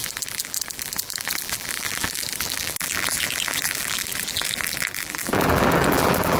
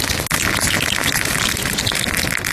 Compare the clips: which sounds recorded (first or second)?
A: second